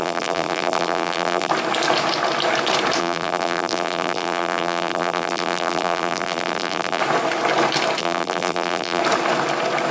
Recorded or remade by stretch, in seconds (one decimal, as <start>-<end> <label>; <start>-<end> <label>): 0.0-1.5 remade; 1.5-3.0 recorded; 3.0-7.0 remade; 7.0-8.0 recorded; 8.0-9.0 remade; 9.0-9.9 recorded